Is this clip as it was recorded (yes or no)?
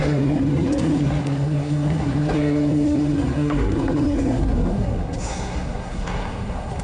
no